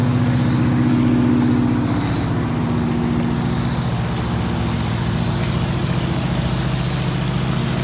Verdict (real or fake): real